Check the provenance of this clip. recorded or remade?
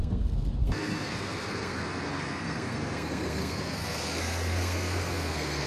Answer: remade